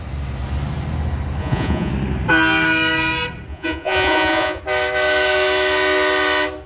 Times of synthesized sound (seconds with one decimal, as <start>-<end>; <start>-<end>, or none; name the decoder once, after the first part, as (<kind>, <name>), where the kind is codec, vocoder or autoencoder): 1.4-1.9 (vocoder, Vocos); 3.5-4.6